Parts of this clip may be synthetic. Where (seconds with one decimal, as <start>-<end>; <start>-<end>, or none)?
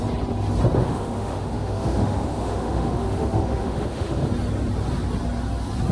0.8-4.3